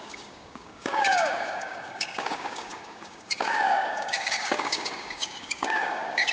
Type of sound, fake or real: fake